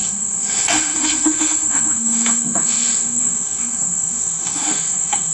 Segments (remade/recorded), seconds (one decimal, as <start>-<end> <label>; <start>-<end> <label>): 0.0-5.3 remade